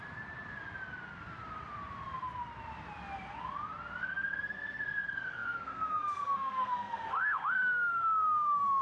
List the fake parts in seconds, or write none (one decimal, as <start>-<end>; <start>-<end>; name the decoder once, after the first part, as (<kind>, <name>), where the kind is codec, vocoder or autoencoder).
4.0-8.8 (codec, SNAC)

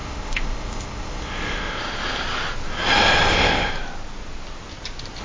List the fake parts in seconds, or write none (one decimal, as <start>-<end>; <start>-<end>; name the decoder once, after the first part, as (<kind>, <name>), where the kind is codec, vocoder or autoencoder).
0.0-1.8 (codec, ZipCodec); 3.3-3.7

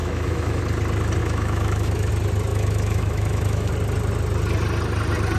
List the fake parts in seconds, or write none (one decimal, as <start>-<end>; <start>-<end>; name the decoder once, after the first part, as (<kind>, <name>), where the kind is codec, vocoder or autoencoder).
0.0-0.6 (autoencoder, DAC-VAE); 1.2-2.1; 2.5-3.7

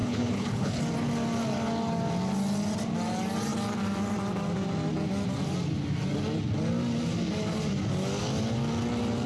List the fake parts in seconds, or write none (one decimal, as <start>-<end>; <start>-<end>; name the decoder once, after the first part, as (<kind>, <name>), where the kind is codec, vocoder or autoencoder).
0.0-0.8 (codec, HILCodec)